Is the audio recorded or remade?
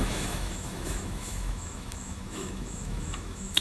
remade